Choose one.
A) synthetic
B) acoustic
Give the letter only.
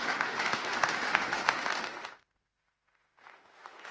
A